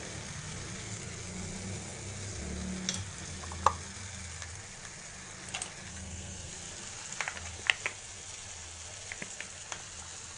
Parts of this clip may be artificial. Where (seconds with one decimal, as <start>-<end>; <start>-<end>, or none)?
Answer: 5.9-6.5